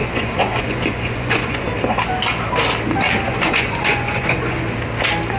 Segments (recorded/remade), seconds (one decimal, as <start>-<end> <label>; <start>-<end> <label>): 0.0-1.7 remade; 1.7-3.3 recorded; 3.3-4.6 remade; 4.6-5.4 recorded